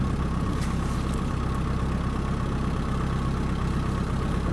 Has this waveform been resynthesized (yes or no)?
no